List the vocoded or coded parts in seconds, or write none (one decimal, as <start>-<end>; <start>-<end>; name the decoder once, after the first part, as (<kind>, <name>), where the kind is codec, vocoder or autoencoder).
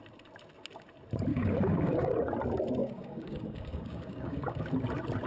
1.3-2.1 (codec, DAC); 2.8-4.7